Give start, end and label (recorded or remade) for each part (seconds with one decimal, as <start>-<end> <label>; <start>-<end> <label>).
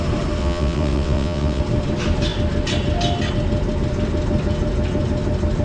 0.0-0.4 recorded; 0.4-1.6 remade; 1.6-5.6 recorded